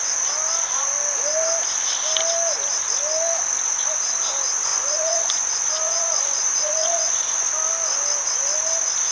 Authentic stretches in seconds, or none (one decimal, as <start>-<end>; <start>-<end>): 0.0-4.7; 7.5-9.1